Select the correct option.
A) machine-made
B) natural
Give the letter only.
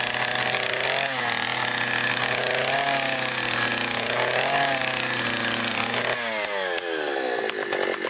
B